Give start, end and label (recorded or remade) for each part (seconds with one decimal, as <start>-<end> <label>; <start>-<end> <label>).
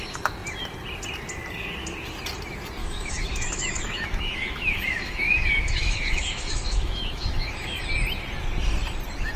0.0-2.8 recorded; 2.8-7.8 remade; 7.8-9.4 recorded